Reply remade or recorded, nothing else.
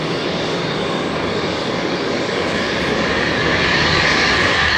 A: remade